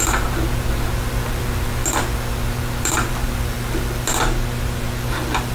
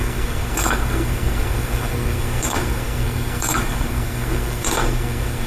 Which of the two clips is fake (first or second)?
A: second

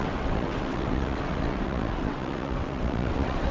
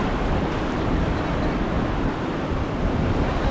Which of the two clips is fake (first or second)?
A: first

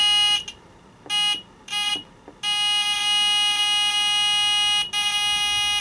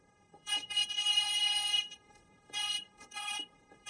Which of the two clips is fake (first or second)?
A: second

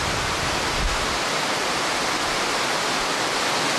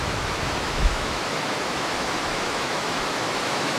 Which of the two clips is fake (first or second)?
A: second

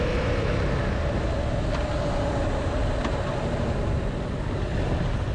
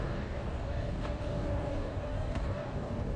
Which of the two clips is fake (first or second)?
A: second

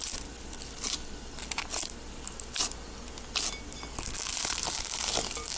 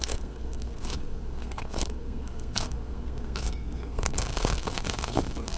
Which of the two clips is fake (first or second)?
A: second